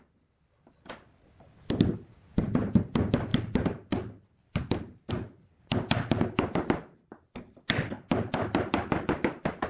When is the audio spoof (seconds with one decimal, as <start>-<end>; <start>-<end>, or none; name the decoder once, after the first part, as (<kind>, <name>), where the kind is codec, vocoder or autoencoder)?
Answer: none